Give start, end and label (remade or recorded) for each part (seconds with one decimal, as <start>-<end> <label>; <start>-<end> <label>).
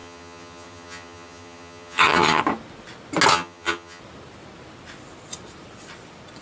0.0-2.4 remade; 2.4-3.3 recorded; 3.3-4.0 remade; 4.0-6.4 recorded